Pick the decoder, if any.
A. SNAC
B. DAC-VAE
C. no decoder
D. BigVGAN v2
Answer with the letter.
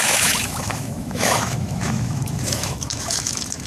B